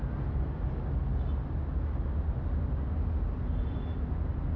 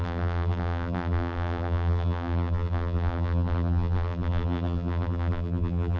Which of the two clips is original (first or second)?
first